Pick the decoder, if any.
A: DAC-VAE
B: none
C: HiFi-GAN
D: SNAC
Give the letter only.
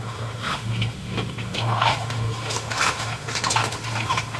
A